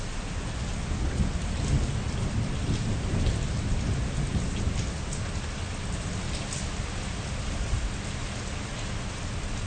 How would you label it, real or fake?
real